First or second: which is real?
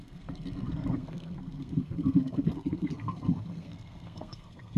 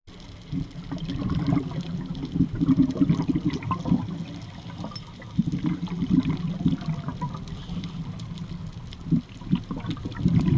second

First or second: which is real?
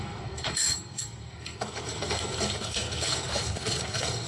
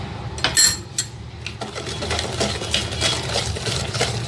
second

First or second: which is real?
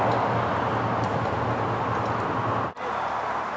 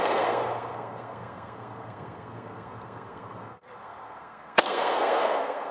first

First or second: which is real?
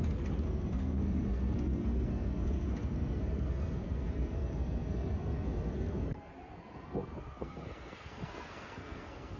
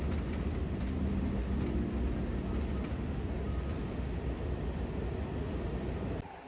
second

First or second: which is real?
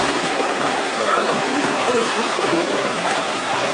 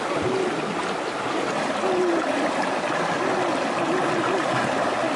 second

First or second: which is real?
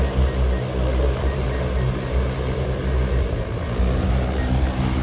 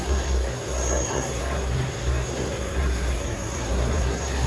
first